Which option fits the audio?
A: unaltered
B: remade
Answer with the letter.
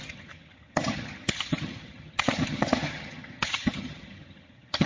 B